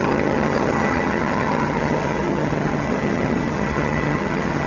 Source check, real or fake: fake